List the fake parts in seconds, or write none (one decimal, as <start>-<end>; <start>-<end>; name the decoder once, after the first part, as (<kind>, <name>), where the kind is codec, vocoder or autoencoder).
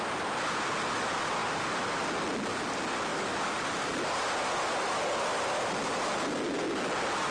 none